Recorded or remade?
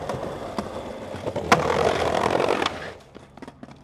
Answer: recorded